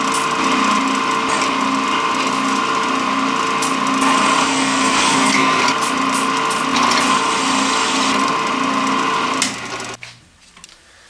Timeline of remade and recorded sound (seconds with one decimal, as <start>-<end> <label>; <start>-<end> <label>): 0.0-4.5 recorded; 4.5-5.6 remade; 5.6-11.1 recorded